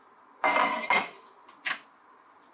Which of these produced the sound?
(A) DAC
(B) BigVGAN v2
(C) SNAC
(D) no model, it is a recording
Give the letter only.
D